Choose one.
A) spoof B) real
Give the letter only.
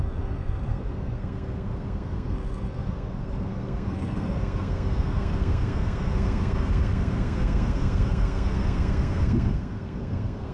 A